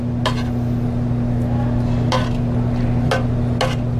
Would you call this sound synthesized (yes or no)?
no